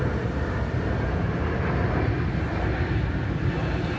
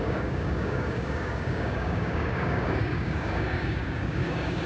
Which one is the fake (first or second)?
second